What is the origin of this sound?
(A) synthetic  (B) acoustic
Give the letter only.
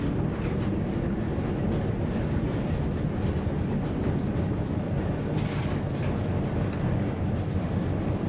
B